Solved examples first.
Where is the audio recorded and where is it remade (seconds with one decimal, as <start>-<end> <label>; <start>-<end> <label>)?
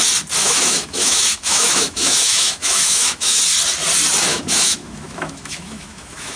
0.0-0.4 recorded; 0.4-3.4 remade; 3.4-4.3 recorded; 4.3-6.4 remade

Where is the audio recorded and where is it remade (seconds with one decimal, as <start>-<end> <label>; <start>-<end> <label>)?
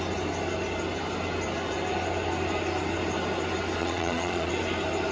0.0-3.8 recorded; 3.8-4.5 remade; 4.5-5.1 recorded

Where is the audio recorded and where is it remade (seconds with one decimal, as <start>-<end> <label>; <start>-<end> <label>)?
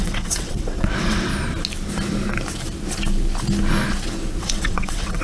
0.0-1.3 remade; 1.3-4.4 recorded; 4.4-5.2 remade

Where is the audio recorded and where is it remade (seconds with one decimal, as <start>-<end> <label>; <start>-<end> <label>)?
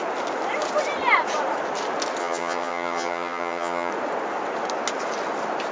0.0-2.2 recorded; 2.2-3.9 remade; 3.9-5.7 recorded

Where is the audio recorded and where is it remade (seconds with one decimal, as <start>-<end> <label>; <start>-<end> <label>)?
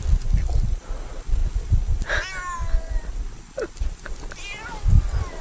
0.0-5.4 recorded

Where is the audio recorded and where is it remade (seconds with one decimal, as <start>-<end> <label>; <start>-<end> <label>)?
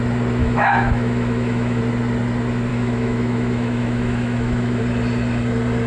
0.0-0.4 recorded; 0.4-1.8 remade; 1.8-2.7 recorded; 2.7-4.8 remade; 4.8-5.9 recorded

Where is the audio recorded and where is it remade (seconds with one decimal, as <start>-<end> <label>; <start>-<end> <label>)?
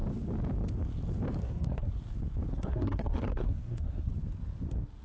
0.0-1.4 recorded; 1.4-1.9 remade; 1.9-2.5 recorded; 2.5-4.1 remade; 4.1-5.0 recorded